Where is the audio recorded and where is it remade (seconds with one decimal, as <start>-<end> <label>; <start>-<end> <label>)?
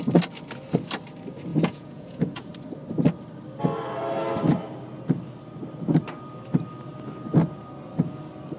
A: 0.0-1.5 recorded; 1.5-2.5 remade; 2.5-8.6 recorded